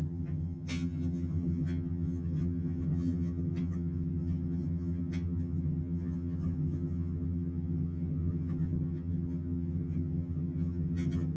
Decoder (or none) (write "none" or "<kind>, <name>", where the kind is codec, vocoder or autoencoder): vocoder, HiFi-GAN